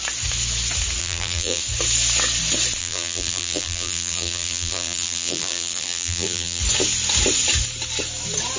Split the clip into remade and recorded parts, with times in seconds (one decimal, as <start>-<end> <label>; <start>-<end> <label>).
0.0-1.0 recorded; 1.0-1.6 remade; 1.6-2.8 recorded; 2.8-6.6 remade; 6.6-8.6 recorded